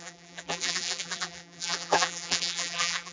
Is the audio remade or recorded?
remade